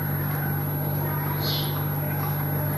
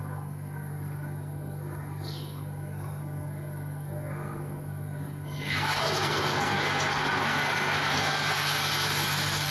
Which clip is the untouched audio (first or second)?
first